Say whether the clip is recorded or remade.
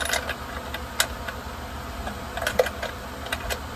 recorded